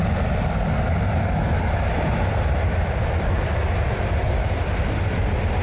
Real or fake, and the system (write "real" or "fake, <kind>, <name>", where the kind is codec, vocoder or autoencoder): real